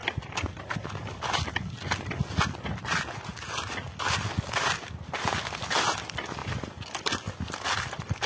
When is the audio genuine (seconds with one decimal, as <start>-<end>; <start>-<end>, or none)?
0.0-8.3